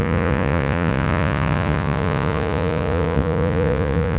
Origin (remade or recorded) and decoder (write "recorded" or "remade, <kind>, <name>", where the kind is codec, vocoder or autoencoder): remade, vocoder, Vocos